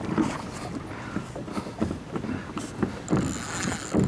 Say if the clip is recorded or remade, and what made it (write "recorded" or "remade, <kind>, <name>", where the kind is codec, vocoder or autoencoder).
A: recorded